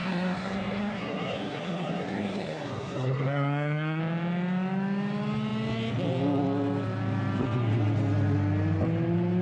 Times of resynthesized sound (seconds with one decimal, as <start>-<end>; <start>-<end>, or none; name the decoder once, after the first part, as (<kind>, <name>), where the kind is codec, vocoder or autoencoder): 0.0-4.0 (codec, SNAC)

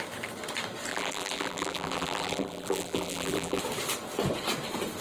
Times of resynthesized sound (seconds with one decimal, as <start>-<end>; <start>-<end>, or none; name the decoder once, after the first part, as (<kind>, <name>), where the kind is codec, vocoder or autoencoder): 0.9-3.6 (vocoder, BigVGAN v2)

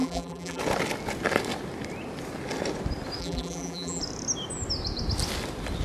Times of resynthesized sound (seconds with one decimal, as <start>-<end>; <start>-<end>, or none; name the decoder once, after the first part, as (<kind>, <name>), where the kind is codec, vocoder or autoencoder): 0.0-0.6 (vocoder, BigVGAN v2); 3.2-4.0

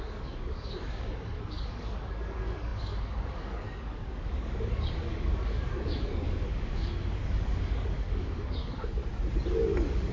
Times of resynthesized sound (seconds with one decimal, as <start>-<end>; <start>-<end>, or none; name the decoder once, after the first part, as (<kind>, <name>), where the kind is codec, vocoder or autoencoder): 0.0-9.0 (codec, DAC); 9.5-10.1

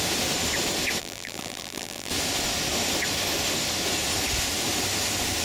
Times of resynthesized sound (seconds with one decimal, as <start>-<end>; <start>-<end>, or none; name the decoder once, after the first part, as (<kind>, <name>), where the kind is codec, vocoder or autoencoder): 1.0-2.1 (vocoder, BigVGAN v2)

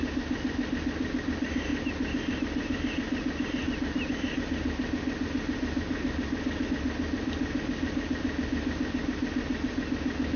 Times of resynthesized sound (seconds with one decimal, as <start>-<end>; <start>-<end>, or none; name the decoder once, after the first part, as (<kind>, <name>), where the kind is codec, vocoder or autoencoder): none